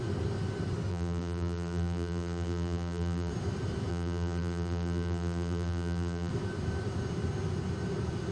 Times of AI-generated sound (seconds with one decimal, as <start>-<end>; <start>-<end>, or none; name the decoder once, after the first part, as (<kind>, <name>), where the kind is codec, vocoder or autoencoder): 0.9-3.3 (vocoder, BigVGAN v2); 3.9-6.3

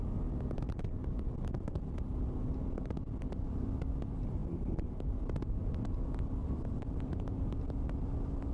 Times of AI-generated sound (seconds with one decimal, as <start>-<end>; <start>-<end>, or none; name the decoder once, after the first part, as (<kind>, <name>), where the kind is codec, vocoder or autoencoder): 4.4-7.2 (vocoder, BigVGAN v2)

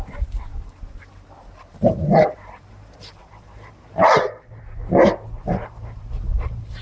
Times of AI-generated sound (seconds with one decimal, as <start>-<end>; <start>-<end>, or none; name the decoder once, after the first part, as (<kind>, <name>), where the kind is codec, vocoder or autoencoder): 0.5-4.6 (vocoder, BigVGAN v2); 5.4-6.8

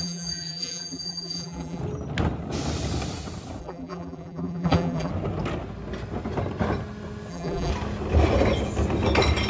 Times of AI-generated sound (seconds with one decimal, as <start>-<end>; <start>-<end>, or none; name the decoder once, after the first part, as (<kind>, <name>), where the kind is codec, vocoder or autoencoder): 0.0-1.8 (vocoder, BigVGAN v2); 3.6-5.1; 7.3-7.7

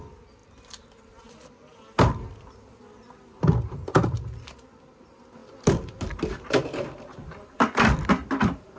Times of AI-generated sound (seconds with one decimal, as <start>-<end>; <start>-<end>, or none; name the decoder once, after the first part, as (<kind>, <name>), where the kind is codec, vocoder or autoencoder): none

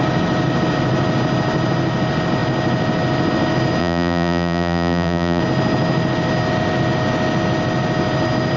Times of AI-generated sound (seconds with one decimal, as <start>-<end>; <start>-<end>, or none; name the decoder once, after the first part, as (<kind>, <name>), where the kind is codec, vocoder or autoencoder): 3.8-5.4 (vocoder, BigVGAN v2)

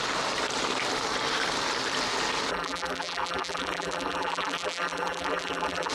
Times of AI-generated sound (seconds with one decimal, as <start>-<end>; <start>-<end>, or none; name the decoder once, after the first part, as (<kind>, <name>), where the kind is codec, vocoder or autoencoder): 2.5-5.9 (vocoder, BigVGAN v2)